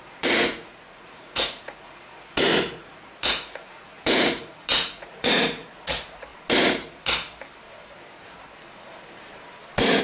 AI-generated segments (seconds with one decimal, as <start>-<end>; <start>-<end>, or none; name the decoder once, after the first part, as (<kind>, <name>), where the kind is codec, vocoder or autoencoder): 0.0-6.3 (vocoder, Vocos)